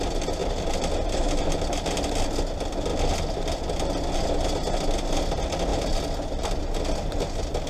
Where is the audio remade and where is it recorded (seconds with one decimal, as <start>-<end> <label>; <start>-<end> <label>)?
0.0-5.7 recorded; 5.7-6.6 remade; 6.6-7.7 recorded